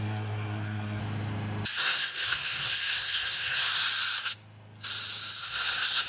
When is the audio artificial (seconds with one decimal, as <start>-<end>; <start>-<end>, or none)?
0.0-1.0; 1.8-3.8; 5.4-6.1